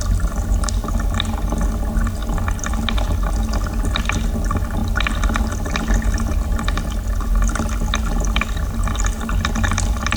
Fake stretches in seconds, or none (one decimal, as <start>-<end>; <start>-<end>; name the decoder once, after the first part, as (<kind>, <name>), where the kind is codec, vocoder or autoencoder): none